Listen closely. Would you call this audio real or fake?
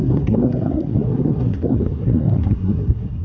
fake